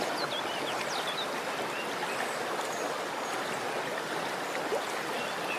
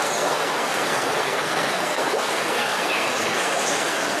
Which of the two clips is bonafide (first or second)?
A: first